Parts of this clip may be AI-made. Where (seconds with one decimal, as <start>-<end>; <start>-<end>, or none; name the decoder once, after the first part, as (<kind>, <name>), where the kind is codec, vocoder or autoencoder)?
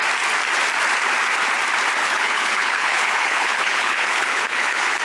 2.0-5.0 (codec, HILCodec)